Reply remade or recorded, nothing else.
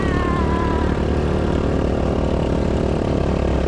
recorded